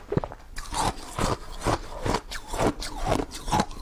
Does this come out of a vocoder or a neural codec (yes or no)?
no